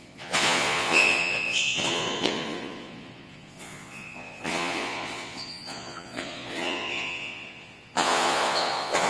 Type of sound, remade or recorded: remade